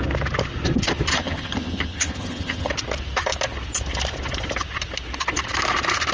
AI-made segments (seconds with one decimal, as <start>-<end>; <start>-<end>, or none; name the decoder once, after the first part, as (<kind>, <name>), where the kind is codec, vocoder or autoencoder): 1.1-2.7 (vocoder, HiFi-GAN)